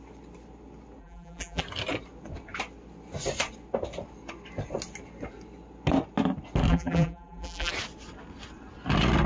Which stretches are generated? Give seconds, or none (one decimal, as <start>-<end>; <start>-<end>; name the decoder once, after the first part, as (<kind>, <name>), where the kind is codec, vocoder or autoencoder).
1.0-1.6 (vocoder, BigVGAN v2); 6.7-7.7